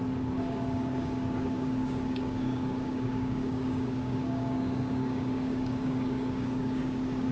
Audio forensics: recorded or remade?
remade